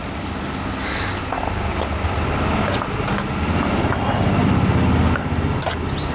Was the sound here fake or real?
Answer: real